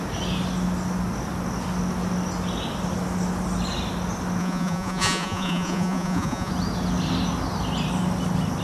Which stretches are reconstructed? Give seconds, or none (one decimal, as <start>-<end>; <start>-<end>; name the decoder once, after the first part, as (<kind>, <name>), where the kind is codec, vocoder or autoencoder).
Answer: 4.4-6.5 (vocoder, Vocos)